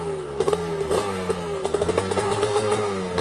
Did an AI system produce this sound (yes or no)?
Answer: yes